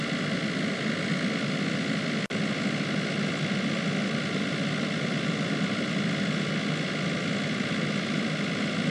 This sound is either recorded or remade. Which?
recorded